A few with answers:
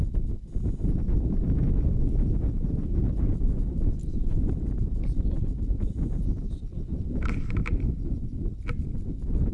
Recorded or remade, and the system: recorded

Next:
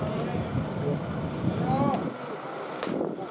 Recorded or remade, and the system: recorded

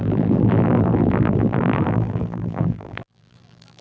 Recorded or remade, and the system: remade, vocoder, BigVGAN v2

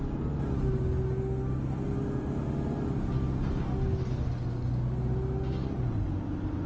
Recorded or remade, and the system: recorded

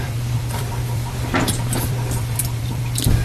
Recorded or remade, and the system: remade, vocoder, BigVGAN v2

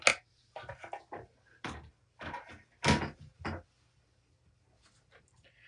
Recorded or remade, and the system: recorded